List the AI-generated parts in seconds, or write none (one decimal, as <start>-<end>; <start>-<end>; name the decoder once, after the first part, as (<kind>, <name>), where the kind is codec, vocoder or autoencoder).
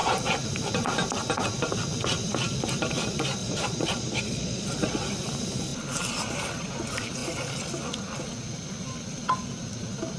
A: 3.4-5.1 (vocoder, Vocos)